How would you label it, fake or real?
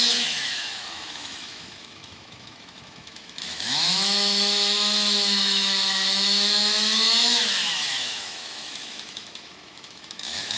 fake